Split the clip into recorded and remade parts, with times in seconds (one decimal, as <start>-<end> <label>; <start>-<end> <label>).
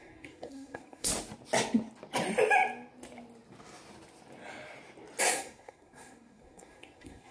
0.0-1.1 remade; 1.1-5.2 recorded; 5.2-7.3 remade